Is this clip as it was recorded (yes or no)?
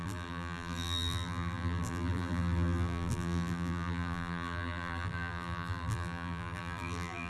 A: no